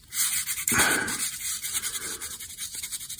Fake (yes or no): yes